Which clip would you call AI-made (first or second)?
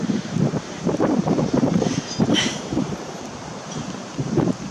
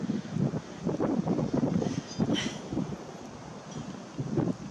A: first